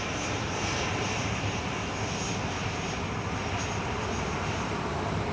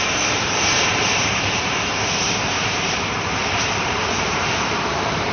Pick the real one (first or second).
first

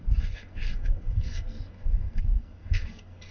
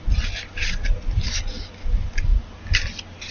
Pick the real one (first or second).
second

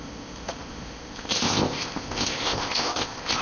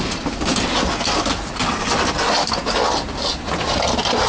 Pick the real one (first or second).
second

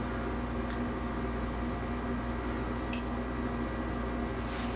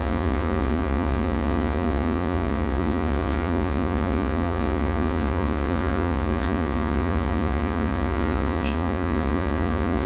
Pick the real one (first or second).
first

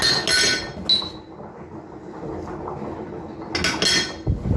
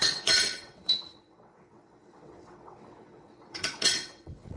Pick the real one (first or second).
first